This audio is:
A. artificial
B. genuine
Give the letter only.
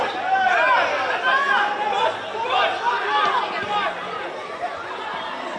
B